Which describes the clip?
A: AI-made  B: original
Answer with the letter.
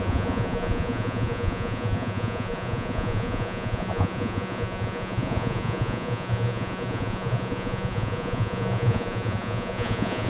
A